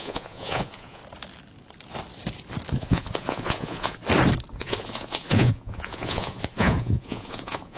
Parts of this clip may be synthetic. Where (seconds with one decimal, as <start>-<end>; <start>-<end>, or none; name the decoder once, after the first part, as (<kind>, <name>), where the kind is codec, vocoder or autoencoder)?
0.0-1.0 (vocoder, Vocos); 2.8-4.0; 4.6-7.8